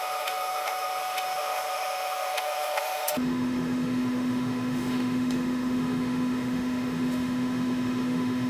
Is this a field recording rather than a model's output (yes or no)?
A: no